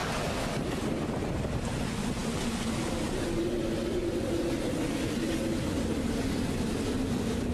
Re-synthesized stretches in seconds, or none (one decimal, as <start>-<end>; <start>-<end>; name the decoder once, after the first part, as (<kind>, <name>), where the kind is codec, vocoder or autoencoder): none